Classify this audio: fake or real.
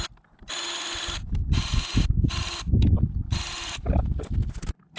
real